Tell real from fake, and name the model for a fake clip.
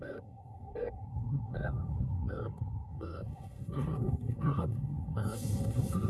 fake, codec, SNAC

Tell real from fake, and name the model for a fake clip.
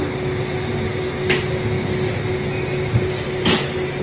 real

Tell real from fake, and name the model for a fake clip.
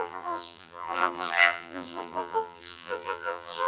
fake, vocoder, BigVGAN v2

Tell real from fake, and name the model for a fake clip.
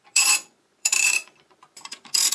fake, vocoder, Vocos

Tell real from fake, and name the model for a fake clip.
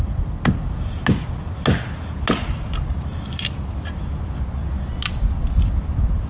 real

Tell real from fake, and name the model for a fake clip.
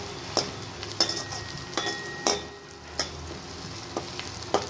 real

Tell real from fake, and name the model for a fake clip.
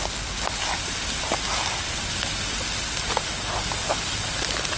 real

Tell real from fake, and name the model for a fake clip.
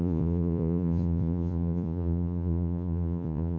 fake, vocoder, Vocos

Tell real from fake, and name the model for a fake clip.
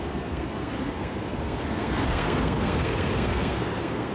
fake, codec, SNAC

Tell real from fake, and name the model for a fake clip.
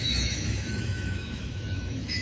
fake, autoencoder, DAC-VAE